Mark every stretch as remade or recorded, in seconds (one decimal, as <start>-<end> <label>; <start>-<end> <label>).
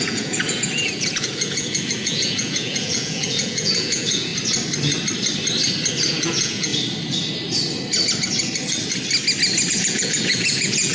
0.0-4.3 remade; 4.3-6.1 recorded; 6.1-6.7 remade; 6.7-9.7 recorded; 9.7-10.9 remade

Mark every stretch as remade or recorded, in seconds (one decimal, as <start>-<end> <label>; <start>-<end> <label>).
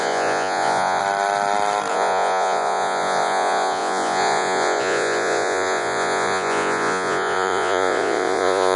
0.0-1.0 remade; 1.0-1.9 recorded; 1.9-8.8 remade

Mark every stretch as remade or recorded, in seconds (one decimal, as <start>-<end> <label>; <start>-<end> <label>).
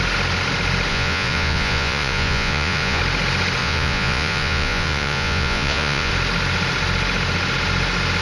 0.0-0.9 recorded; 0.9-3.0 remade; 3.0-3.6 recorded; 3.6-6.1 remade; 6.1-8.2 recorded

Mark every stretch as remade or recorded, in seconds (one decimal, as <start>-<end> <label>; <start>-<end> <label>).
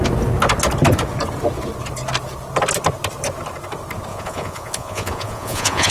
0.0-4.1 recorded; 4.1-5.9 remade